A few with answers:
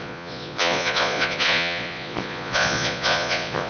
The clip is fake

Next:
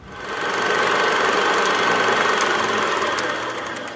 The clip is real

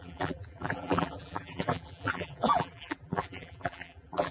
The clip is fake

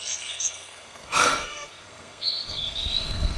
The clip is fake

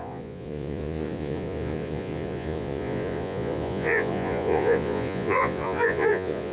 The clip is fake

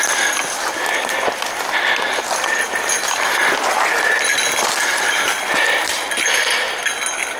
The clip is real